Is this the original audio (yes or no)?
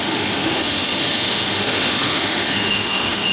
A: no